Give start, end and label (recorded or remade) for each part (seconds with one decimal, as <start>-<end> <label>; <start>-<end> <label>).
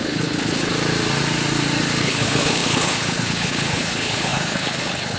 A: 0.0-0.7 remade; 0.7-2.0 recorded; 2.0-5.2 remade